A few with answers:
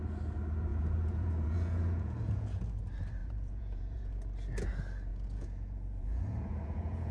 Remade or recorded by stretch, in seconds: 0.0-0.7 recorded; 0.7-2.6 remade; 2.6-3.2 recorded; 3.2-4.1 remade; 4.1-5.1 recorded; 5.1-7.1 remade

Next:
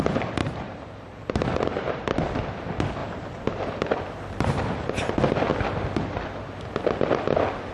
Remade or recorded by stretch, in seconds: 0.0-0.4 recorded; 0.4-2.1 remade; 2.1-3.0 recorded; 3.0-5.1 remade; 5.1-7.7 recorded

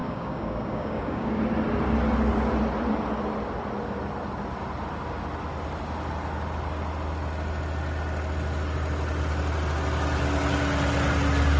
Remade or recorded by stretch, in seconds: 0.0-1.4 remade; 1.4-11.6 recorded

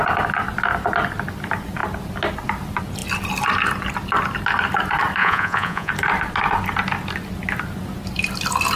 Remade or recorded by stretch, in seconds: 0.0-5.2 recorded; 5.2-5.9 remade; 5.9-8.8 recorded